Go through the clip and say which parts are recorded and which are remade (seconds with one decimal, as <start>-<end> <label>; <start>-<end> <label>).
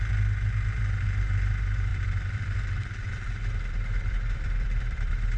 0.0-1.9 recorded; 1.9-5.4 remade